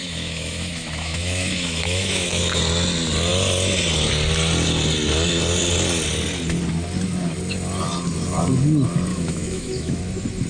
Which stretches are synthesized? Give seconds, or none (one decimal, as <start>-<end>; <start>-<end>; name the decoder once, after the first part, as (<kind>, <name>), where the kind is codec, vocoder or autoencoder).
0.0-2.4 (autoencoder, DAC-VAE); 9.1-10.0